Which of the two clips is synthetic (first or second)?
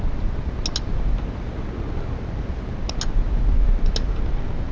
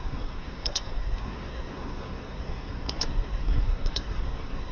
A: second